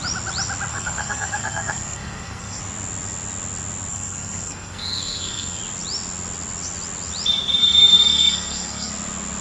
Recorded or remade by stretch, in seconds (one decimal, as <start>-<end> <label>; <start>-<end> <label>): 0.0-0.7 recorded; 0.7-2.6 remade; 2.6-3.9 recorded; 3.9-5.6 remade; 5.6-7.6 recorded; 7.6-8.9 remade; 8.9-9.4 recorded